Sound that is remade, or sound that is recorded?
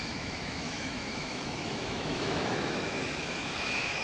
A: remade